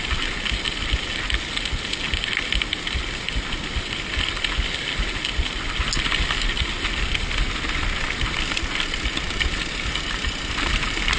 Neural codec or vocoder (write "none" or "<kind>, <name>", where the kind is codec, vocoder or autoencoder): none